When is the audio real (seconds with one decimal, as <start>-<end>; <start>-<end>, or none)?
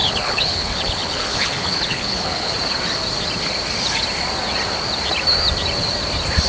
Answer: 2.5-6.5